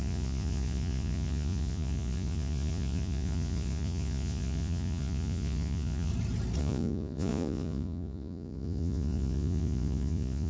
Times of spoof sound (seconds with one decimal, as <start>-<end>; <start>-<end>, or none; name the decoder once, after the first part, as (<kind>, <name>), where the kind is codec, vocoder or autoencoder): 0.0-6.1 (vocoder, Vocos); 6.6-10.5

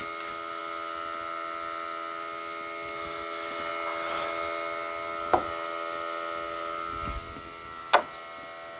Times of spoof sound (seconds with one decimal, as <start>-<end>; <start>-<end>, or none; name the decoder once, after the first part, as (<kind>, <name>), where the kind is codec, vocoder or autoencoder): none

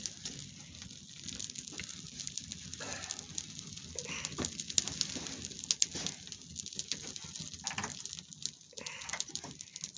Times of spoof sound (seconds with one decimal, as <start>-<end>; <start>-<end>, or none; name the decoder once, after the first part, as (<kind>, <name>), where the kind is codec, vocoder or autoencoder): none

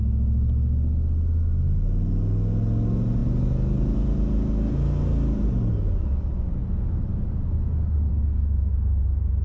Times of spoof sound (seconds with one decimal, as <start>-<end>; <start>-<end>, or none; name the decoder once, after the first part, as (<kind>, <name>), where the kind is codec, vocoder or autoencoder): 8.1-8.7 (codec, SNAC)

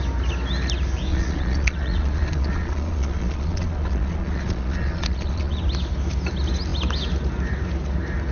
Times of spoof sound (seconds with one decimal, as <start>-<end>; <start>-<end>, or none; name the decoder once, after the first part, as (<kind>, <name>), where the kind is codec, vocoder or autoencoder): 1.1-5.6 (vocoder, Vocos)